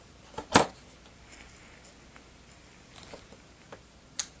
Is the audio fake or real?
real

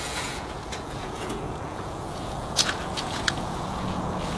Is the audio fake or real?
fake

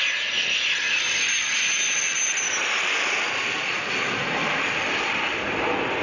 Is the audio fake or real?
real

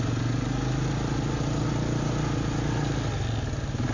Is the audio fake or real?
real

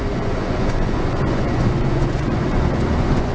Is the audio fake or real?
fake